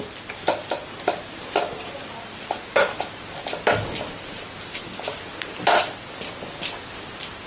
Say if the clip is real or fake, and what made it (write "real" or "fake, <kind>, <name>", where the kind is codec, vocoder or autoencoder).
real